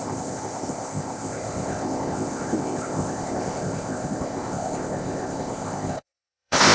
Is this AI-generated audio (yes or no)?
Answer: yes